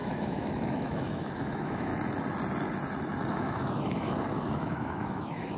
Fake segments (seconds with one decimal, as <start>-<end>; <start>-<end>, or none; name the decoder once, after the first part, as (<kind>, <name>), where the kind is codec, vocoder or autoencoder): 0.0-1.9 (autoencoder, DAC-VAE); 3.3-5.6